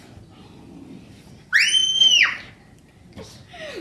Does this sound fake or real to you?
real